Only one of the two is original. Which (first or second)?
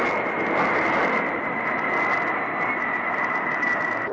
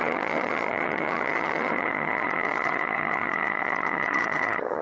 first